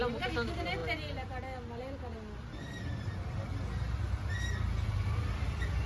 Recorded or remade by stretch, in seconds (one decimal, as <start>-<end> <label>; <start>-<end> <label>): 0.0-5.9 recorded

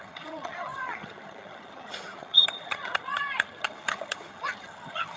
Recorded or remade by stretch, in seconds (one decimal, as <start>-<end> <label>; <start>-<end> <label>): 0.0-5.2 remade

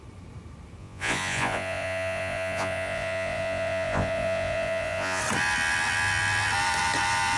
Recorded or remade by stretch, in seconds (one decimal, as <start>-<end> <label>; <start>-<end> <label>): 0.0-0.8 recorded; 0.8-5.2 remade; 5.2-7.4 recorded

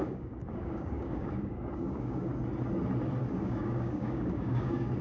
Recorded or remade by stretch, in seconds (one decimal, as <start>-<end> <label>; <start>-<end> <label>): 0.0-2.3 remade; 2.3-3.3 recorded; 3.3-5.0 remade

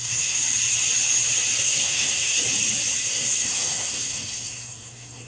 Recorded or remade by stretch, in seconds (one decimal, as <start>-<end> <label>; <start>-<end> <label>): 0.0-0.4 remade; 0.4-1.6 recorded; 1.6-2.4 remade; 2.4-3.0 recorded; 3.0-5.3 remade

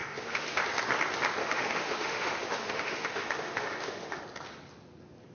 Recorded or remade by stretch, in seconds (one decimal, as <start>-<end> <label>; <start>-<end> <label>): 0.0-0.6 remade; 0.6-1.4 recorded; 1.4-4.2 remade; 4.2-5.3 recorded

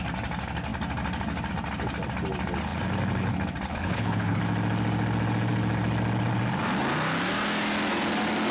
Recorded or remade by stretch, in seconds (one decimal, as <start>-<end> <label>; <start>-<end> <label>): 0.0-3.7 recorded; 3.7-4.4 remade; 4.4-8.5 recorded